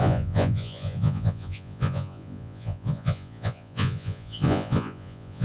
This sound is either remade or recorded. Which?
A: remade